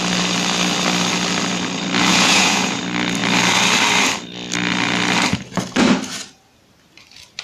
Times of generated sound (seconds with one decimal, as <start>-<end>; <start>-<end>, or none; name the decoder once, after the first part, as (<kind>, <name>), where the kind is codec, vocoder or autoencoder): 2.1-2.8 (vocoder, Vocos)